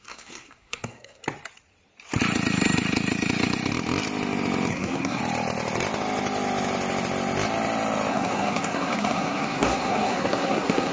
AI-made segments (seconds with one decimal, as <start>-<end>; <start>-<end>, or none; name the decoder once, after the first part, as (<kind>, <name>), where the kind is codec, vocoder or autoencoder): 0.0-1.2 (codec, SNAC); 4.7-5.2; 8.1-10.9